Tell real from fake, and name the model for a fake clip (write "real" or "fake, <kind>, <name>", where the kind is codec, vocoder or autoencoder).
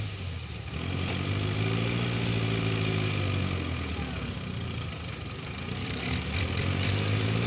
real